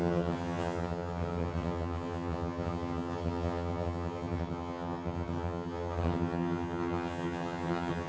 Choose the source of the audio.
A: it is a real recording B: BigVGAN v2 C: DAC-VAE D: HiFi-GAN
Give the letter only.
D